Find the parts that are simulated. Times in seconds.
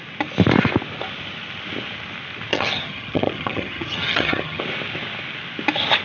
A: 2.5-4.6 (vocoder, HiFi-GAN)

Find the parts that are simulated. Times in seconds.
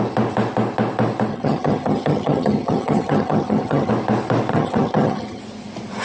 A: 1.3-3.9 (vocoder, HiFi-GAN); 4.5-5.4